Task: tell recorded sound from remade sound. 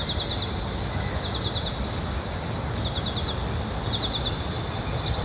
recorded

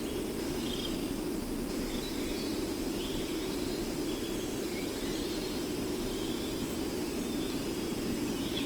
recorded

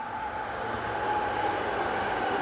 recorded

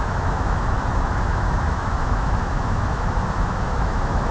remade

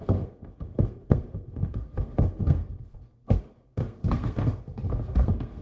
remade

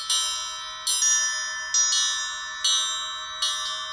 recorded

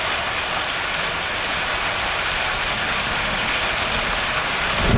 recorded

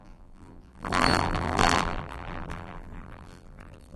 remade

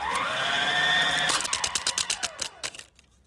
recorded